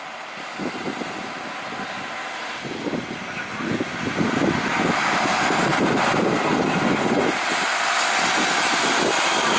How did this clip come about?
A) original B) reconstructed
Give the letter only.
A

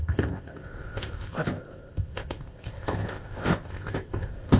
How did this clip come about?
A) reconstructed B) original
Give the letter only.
A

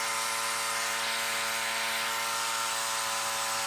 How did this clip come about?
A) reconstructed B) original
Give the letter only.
B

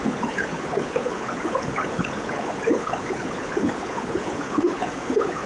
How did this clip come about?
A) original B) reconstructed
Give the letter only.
B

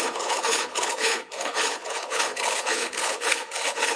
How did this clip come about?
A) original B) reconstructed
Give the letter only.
B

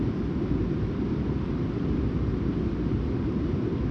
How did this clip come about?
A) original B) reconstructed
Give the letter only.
A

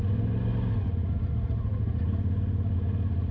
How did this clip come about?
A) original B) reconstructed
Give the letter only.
A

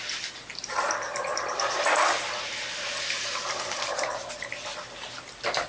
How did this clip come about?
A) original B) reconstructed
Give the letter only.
A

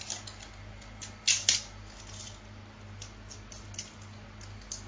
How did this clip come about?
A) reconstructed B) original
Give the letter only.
B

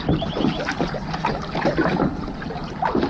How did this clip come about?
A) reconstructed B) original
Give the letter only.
B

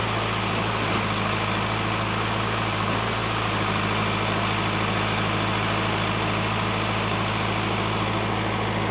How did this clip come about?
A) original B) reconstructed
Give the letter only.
A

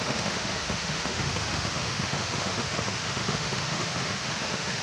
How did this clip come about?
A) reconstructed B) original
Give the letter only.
A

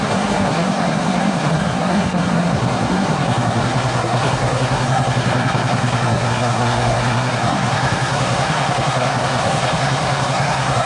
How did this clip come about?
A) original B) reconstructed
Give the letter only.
B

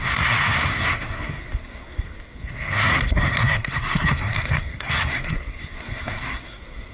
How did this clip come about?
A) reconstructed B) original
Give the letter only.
A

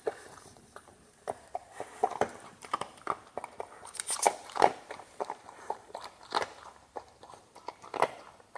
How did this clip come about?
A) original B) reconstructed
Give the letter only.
B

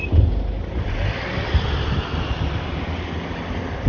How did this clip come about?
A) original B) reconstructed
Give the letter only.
A